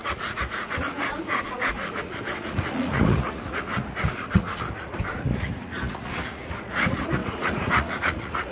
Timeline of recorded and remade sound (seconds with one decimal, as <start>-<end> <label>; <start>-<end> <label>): 0.0-8.5 remade